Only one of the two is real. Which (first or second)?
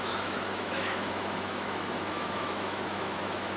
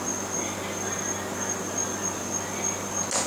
second